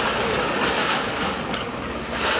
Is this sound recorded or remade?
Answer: remade